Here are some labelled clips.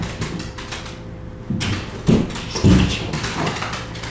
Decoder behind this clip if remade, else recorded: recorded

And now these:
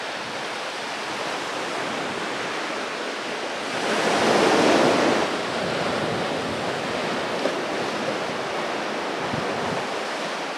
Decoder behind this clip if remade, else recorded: recorded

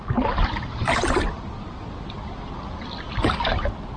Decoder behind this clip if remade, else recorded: recorded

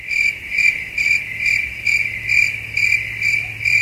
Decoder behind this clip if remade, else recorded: remade, vocoder, BigVGAN v2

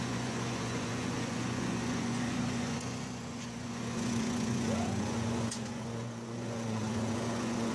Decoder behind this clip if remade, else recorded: remade, vocoder, Vocos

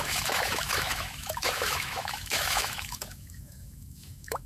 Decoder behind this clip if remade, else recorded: remade, autoencoder, DAC-VAE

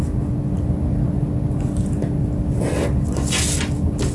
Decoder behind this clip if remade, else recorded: recorded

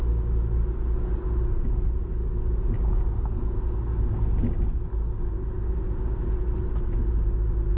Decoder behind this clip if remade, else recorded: recorded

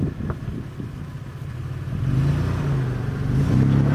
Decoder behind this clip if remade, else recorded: recorded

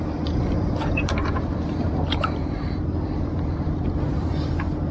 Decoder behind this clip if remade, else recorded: remade, vocoder, BigVGAN v2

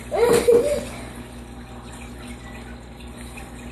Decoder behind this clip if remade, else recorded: recorded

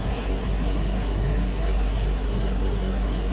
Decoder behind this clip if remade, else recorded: remade, codec, SNAC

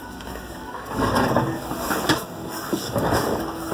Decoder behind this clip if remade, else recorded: remade, codec, DAC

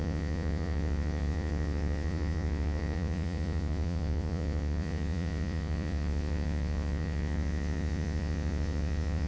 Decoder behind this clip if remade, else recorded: remade, vocoder, Vocos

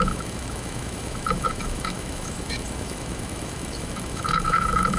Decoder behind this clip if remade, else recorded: remade, autoencoder, DAC-VAE